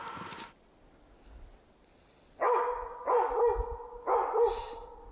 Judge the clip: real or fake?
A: real